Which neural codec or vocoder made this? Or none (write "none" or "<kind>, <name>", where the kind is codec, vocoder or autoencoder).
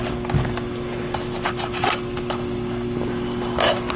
none